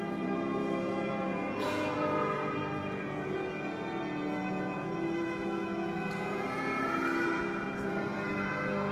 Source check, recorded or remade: remade